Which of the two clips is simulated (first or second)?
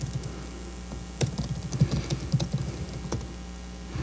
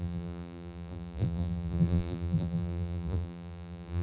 second